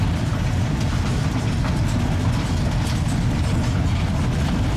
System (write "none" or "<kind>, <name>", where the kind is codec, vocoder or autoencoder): none